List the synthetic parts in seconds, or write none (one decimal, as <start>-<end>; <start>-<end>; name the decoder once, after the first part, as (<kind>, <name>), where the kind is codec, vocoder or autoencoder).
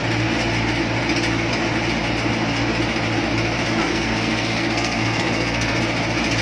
3.8-5.8 (codec, SNAC)